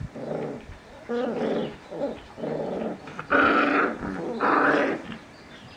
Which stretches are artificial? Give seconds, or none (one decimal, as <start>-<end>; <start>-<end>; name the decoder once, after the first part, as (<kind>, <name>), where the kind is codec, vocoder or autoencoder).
none